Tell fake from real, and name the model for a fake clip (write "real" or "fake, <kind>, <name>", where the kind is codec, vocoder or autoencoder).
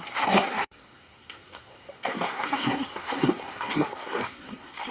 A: fake, codec, SNAC